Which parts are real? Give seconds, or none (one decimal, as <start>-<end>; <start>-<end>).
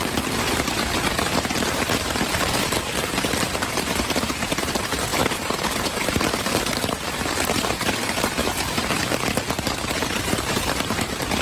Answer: none